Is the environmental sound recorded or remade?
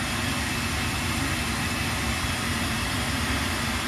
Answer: remade